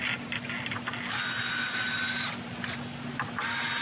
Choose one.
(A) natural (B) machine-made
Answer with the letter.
A